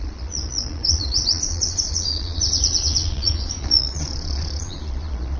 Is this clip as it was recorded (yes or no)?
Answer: no